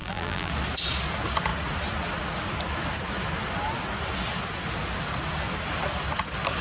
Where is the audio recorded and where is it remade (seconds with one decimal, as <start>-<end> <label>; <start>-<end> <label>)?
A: 0.0-0.5 remade; 0.5-6.6 recorded